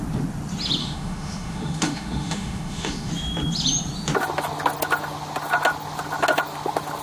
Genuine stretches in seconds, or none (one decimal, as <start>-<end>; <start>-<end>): 0.0-0.8; 3.1-7.0